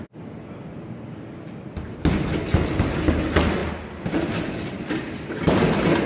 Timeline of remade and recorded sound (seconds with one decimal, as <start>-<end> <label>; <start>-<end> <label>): 0.0-6.1 recorded